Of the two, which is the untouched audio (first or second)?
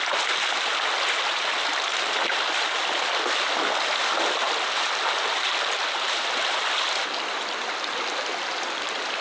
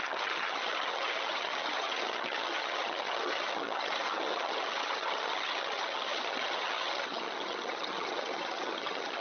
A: first